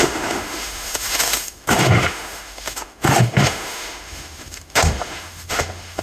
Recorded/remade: remade